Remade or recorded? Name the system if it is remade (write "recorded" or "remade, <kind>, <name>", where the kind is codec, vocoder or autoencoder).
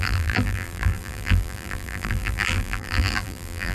remade, vocoder, BigVGAN v2